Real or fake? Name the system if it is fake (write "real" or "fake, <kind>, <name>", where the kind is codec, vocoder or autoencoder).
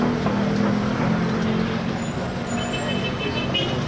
real